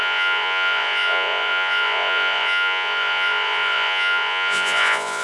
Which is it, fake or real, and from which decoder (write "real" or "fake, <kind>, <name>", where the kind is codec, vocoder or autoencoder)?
fake, vocoder, Vocos